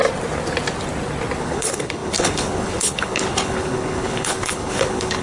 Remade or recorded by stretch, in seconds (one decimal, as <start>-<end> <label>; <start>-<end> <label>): 0.0-1.4 recorded; 1.4-5.2 remade